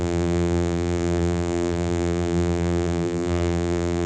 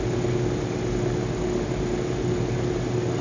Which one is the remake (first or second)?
first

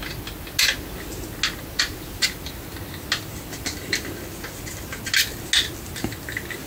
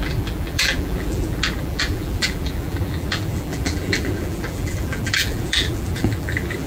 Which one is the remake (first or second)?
second